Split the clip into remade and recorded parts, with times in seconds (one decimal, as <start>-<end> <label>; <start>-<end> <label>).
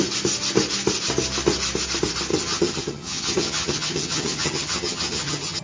0.0-2.3 recorded; 2.3-5.6 remade